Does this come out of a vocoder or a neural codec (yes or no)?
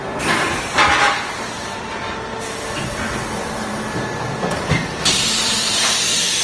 no